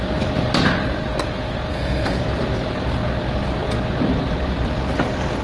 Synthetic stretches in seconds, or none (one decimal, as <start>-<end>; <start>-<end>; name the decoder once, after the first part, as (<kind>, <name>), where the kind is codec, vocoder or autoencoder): 1.7-2.2 (codec, SNAC)